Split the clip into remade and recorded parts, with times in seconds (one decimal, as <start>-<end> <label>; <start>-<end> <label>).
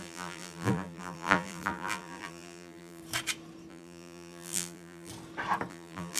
0.0-3.0 remade; 3.0-3.7 recorded; 3.7-5.1 remade; 5.1-5.7 recorded; 5.7-6.2 remade